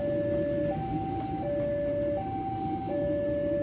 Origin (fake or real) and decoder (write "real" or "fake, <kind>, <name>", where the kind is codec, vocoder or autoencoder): real